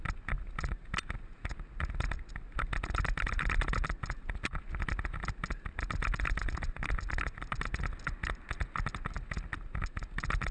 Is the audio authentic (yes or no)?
yes